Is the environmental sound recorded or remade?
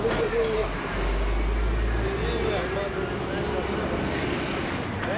recorded